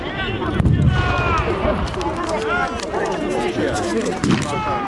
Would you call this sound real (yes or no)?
yes